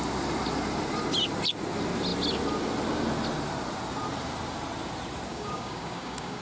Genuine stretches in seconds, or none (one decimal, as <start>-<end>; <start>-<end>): 0.0-5.3